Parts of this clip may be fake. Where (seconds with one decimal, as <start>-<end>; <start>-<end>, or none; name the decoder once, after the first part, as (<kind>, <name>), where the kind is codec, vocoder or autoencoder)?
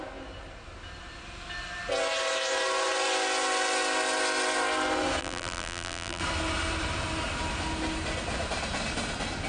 5.2-6.2 (vocoder, BigVGAN v2)